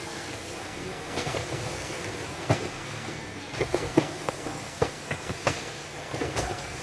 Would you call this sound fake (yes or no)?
yes